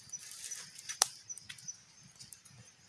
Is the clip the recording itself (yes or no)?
no